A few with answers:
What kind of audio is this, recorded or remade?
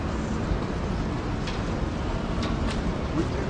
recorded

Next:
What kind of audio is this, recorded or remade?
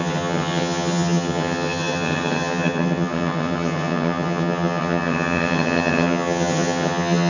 remade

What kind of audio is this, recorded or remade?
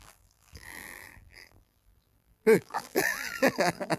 remade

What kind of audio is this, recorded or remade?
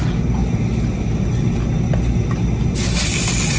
recorded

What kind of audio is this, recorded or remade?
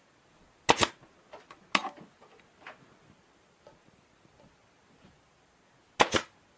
recorded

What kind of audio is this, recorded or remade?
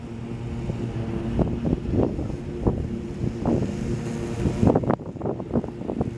recorded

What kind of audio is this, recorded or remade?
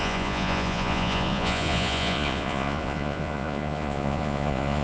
remade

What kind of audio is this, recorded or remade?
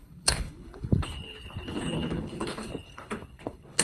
remade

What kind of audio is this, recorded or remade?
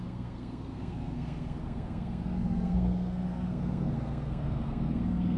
remade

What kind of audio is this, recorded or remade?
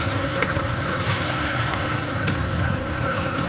remade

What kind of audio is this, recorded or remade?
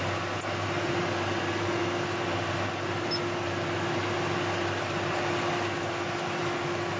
recorded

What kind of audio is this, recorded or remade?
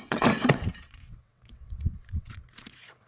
remade